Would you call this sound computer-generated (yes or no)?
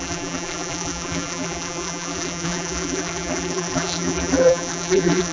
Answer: yes